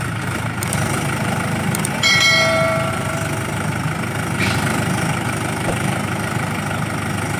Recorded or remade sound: remade